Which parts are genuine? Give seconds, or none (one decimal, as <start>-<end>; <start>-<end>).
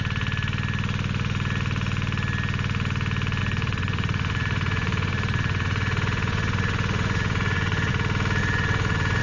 0.0-3.4; 7.9-8.4